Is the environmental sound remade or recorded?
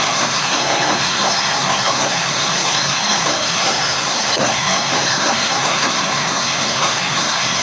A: remade